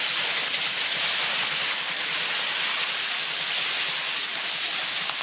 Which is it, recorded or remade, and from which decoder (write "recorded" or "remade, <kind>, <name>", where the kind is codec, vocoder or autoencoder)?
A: recorded